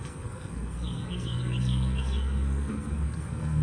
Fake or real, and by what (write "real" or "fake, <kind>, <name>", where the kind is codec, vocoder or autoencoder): fake, codec, SNAC